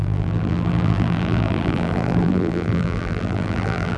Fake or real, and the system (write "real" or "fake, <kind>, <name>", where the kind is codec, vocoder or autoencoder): fake, vocoder, BigVGAN v2